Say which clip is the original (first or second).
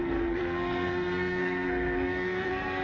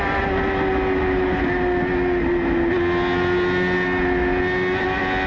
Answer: second